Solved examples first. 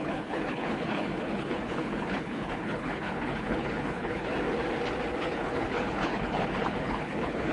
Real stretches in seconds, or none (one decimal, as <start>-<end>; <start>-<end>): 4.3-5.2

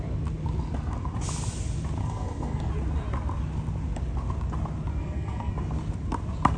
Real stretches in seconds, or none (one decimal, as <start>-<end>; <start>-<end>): 0.0-2.0; 2.7-5.0; 5.5-6.6

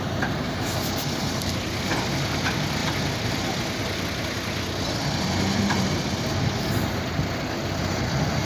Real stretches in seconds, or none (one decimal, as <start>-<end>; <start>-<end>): 0.0-8.4